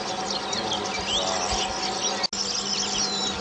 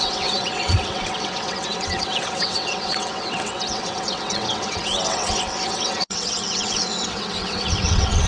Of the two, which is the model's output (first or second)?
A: second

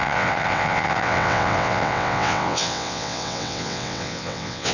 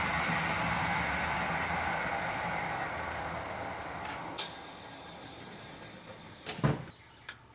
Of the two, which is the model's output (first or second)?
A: first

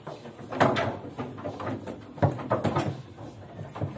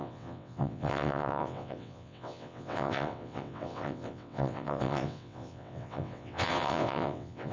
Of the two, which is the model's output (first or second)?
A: second